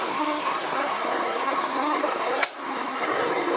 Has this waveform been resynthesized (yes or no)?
yes